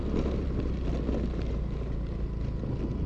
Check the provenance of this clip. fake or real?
real